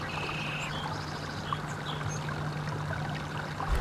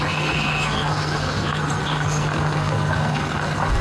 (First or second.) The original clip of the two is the first